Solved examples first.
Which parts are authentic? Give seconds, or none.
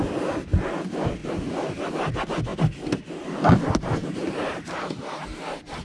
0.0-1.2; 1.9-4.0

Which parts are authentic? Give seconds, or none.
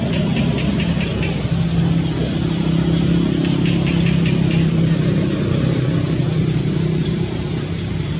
0.0-8.2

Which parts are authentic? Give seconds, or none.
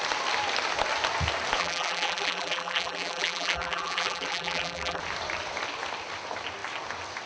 0.0-1.6; 5.0-7.3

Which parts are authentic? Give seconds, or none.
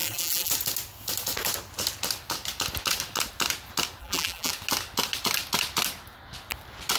0.5-4.0; 4.5-7.0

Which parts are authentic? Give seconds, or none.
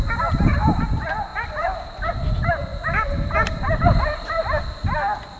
0.0-1.3; 2.1-2.7; 3.9-5.4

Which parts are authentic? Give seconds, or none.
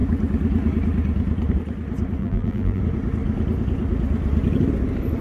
0.0-2.2; 2.8-5.2